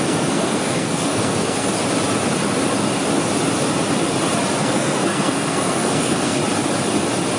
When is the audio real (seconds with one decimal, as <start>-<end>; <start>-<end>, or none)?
1.7-4.6; 6.4-7.4